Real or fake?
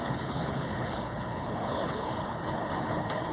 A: fake